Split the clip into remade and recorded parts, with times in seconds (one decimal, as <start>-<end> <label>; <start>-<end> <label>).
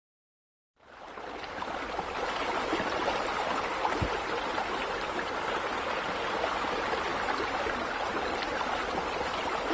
0.0-9.7 recorded